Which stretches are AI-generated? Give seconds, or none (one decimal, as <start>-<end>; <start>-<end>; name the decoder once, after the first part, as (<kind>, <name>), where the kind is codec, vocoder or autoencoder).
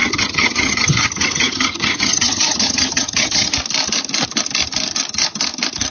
0.0-3.5 (vocoder, HiFi-GAN)